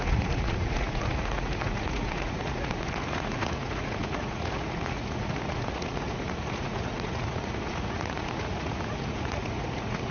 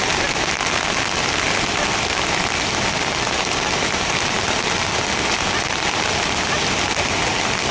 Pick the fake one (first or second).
first